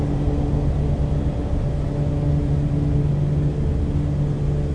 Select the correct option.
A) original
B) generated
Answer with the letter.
A